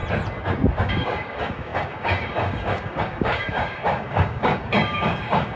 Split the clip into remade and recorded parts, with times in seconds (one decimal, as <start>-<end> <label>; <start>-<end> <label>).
0.0-0.8 recorded; 0.8-5.6 remade